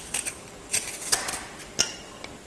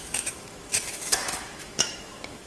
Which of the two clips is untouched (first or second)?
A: first